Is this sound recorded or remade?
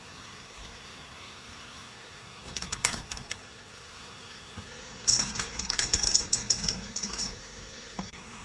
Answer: remade